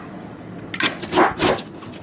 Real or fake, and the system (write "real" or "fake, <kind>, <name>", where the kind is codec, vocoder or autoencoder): real